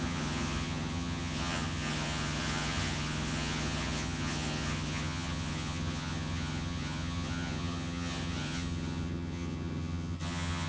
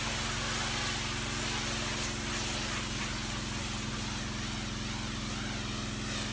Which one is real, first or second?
second